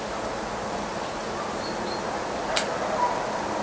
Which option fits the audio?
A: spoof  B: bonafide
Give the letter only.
B